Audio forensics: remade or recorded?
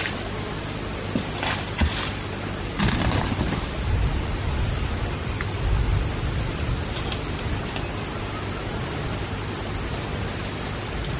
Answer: recorded